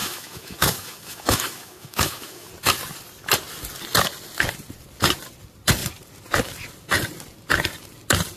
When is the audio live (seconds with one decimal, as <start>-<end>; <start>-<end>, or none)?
2.5-8.4